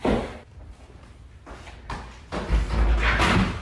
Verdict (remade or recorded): recorded